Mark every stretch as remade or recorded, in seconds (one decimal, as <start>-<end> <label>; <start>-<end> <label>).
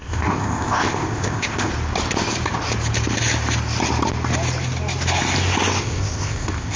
0.0-1.7 remade; 1.7-5.8 recorded; 5.8-6.8 remade